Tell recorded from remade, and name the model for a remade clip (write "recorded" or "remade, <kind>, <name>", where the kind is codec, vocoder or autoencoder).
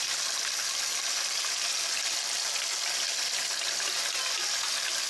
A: recorded